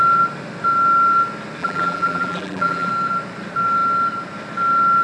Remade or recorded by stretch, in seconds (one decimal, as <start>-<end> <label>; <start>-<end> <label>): 0.0-1.6 recorded; 1.6-2.9 remade; 2.9-5.0 recorded